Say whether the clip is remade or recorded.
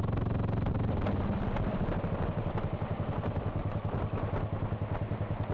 recorded